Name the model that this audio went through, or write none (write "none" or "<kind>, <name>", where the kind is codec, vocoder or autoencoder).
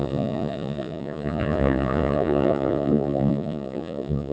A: vocoder, Vocos